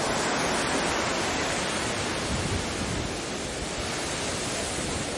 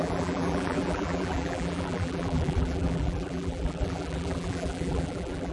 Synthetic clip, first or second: second